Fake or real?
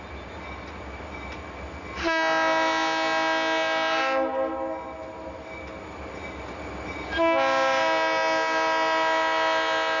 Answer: real